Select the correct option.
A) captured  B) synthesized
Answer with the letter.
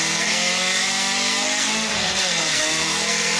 B